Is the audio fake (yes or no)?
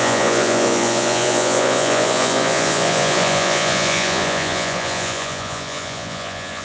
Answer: yes